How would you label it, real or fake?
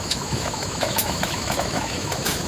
fake